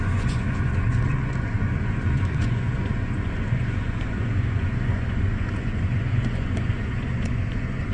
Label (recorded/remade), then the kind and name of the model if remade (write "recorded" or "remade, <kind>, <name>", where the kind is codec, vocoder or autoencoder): remade, vocoder, Vocos